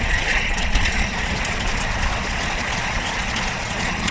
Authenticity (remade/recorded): remade